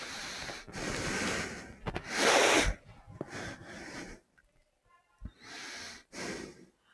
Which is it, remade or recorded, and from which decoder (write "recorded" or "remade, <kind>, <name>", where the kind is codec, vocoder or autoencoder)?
recorded